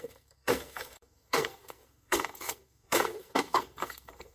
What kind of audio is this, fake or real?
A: fake